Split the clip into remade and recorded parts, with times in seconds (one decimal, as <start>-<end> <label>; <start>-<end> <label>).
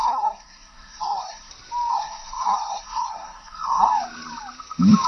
0.0-1.5 remade; 1.5-1.9 recorded; 1.9-3.9 remade; 3.9-5.1 recorded